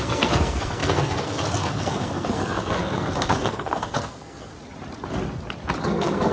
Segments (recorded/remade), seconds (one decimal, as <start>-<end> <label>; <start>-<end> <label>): 0.0-4.5 remade; 4.5-5.8 recorded; 5.8-6.3 remade